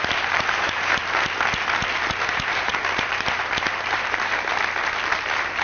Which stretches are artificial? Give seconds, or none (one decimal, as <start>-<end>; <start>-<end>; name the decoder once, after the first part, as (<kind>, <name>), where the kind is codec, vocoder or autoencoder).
0.0-1.0 (vocoder, BigVGAN v2); 2.2-4.5; 5.1-5.6